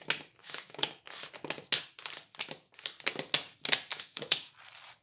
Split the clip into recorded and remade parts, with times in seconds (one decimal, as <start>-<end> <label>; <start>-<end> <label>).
0.0-0.4 recorded; 0.4-1.0 remade; 1.0-3.9 recorded; 3.9-4.5 remade; 4.5-5.0 recorded